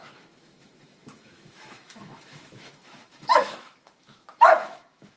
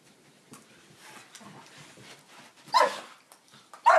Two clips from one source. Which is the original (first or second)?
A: second